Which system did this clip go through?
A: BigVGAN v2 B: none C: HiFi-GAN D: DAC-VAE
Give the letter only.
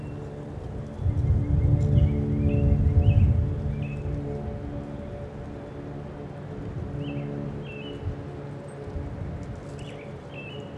B